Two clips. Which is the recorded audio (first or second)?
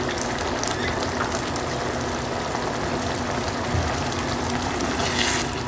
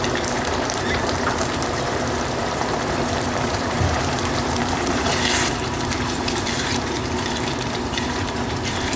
first